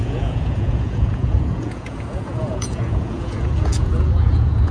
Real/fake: fake